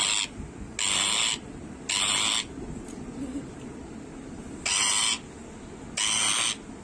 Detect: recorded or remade recorded